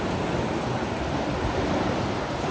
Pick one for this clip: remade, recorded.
recorded